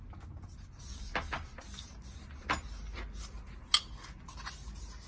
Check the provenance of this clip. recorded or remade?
recorded